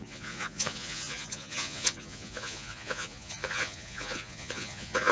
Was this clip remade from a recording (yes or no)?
yes